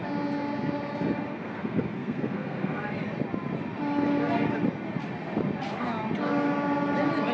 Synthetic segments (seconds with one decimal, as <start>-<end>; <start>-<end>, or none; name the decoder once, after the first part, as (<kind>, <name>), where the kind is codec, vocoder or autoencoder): 1.3-2.9 (codec, SNAC)